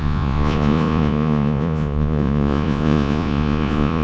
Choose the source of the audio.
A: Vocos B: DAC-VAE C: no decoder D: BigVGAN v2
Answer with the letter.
A